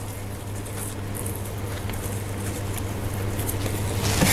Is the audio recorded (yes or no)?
yes